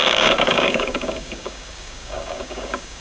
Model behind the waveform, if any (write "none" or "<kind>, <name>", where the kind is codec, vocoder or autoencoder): codec, DAC